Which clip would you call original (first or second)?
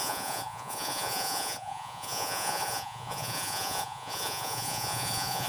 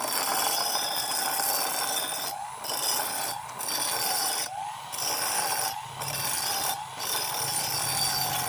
second